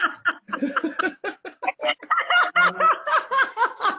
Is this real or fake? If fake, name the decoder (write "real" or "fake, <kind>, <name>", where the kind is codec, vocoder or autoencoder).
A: real